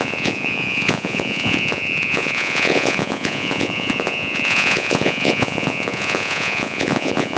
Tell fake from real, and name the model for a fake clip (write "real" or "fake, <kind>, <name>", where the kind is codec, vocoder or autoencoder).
fake, vocoder, Vocos